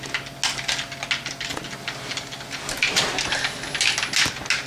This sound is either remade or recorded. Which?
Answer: recorded